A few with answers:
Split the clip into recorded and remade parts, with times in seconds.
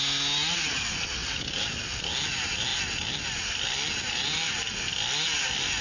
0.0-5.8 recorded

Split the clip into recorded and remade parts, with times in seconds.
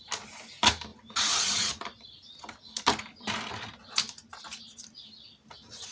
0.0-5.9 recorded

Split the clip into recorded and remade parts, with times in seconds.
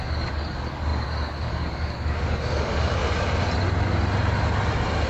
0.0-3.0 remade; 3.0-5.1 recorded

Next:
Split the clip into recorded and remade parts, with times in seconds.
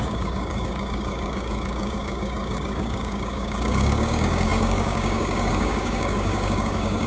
0.0-7.1 remade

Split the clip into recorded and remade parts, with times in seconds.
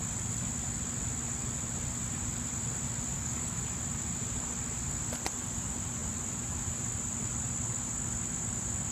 0.0-3.1 recorded; 3.1-3.6 remade; 3.6-8.9 recorded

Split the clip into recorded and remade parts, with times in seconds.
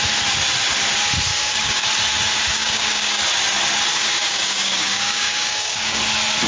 0.0-1.3 recorded; 1.3-1.9 remade; 1.9-2.5 recorded; 2.5-3.2 remade; 3.2-3.9 recorded; 3.9-6.0 remade; 6.0-6.5 recorded